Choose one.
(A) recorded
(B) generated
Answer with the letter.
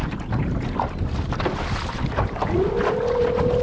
A